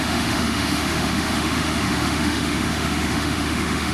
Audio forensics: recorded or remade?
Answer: remade